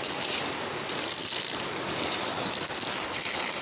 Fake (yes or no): yes